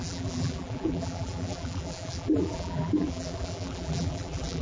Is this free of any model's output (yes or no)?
no